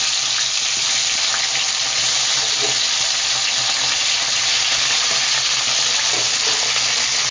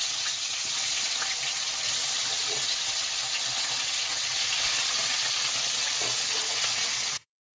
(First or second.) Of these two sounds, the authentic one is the first